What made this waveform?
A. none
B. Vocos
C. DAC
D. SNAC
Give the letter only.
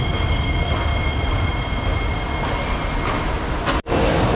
A